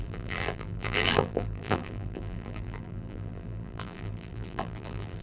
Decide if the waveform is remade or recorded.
remade